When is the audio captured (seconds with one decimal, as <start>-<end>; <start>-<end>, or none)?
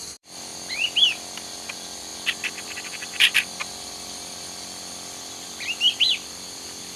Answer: 0.5-1.7